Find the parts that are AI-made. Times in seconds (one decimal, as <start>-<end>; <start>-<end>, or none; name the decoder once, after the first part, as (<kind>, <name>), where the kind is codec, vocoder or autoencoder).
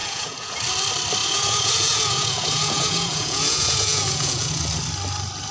0.0-0.6 (vocoder, Vocos); 1.2-4.5